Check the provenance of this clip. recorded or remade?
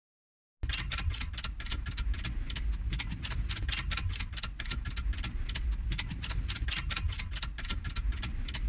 recorded